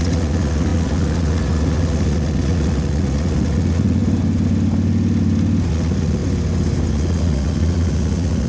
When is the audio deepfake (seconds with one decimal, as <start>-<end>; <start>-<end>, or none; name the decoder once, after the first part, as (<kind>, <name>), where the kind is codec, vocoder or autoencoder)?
0.0-4.0 (vocoder, Vocos); 5.7-6.2; 6.9-8.5